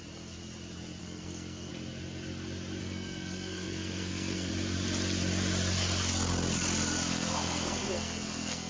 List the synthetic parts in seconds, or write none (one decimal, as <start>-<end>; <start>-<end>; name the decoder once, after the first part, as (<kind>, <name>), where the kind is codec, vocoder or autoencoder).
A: 1.0-1.7 (codec, SNAC); 2.8-4.5; 7.1-8.7